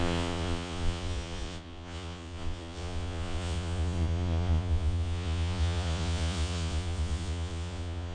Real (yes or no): no